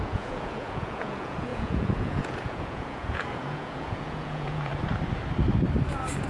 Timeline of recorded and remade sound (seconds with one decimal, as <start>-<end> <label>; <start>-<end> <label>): 0.0-4.7 remade; 4.7-6.3 recorded